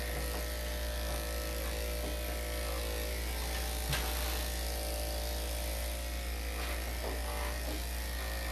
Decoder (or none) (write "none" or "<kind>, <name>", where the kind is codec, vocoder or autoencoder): none